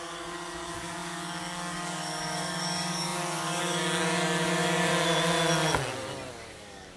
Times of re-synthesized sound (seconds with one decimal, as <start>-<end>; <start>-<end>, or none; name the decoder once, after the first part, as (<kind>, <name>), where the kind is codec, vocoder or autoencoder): 0.0-4.9 (codec, DAC); 6.3-7.0